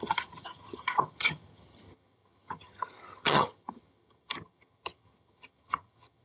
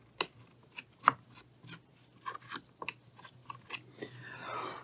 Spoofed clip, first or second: first